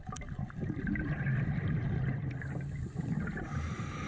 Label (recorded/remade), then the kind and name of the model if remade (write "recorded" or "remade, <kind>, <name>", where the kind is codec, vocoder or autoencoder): recorded